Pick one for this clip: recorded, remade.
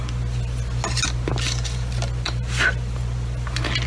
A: recorded